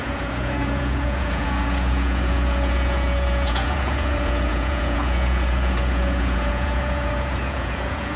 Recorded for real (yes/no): no